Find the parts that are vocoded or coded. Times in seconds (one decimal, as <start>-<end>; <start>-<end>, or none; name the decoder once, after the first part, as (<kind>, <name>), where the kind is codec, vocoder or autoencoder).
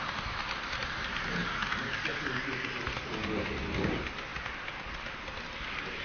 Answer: none